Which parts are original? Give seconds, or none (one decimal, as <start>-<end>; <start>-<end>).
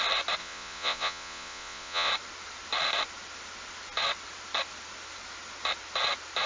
0.0-0.4; 2.1-6.5